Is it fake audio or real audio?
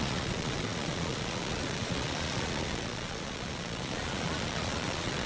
fake